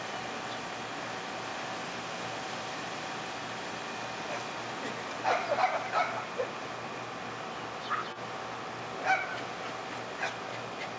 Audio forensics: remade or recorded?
recorded